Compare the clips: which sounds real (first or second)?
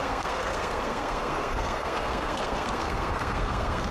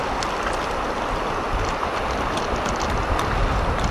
second